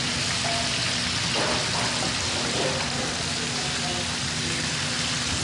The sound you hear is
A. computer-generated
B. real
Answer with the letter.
B